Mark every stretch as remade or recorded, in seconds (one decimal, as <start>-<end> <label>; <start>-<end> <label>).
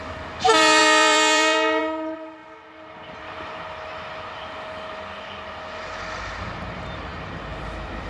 0.0-8.1 remade